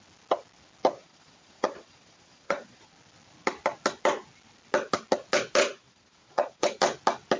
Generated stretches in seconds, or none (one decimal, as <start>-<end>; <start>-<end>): 1.0-2.9; 5.6-6.8